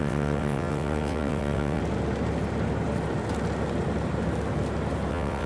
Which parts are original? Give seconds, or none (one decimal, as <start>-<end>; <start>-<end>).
1.8-5.1